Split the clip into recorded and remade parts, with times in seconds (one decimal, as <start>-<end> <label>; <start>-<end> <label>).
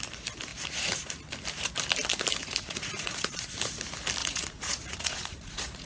0.0-2.4 recorded; 2.4-3.4 remade; 3.4-4.2 recorded; 4.2-5.9 remade